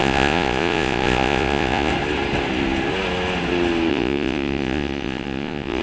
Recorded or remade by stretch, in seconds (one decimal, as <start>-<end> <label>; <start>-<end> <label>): 0.0-1.9 remade; 1.9-3.9 recorded; 3.9-5.8 remade